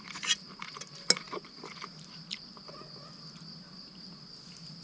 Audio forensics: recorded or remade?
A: recorded